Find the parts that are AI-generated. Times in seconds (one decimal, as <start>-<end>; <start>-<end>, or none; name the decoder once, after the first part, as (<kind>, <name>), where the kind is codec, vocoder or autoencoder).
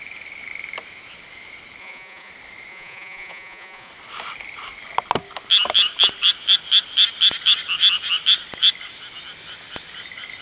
1.8-2.3 (vocoder, Vocos); 2.7-3.9